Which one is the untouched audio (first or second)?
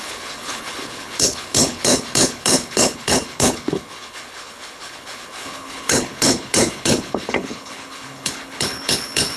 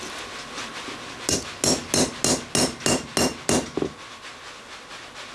second